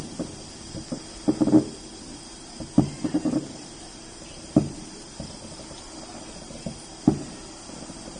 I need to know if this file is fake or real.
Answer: real